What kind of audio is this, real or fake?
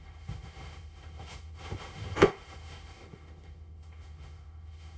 fake